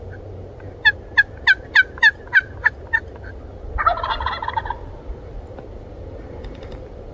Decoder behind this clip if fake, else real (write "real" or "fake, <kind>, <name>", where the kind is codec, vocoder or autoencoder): real